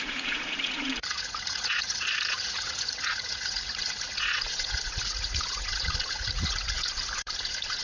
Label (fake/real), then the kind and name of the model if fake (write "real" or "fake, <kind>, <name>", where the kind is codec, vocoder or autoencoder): fake, vocoder, Vocos